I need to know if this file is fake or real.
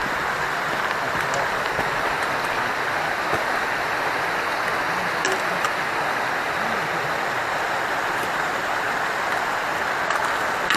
real